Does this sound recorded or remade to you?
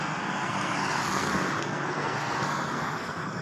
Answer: remade